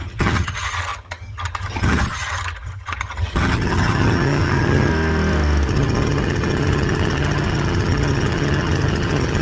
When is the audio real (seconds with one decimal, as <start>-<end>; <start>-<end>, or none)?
4.9-5.7